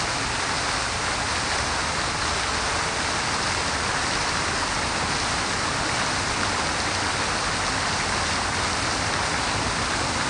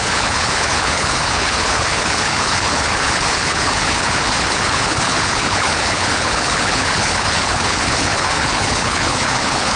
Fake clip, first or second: second